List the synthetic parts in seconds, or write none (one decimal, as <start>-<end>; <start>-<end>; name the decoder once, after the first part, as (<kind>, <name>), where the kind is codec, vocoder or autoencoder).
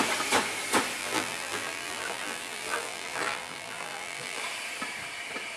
1.0-4.4 (vocoder, BigVGAN v2)